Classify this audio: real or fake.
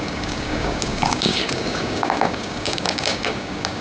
fake